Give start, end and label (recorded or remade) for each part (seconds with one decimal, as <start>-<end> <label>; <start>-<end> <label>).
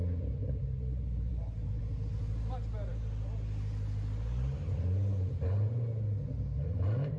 0.0-7.2 recorded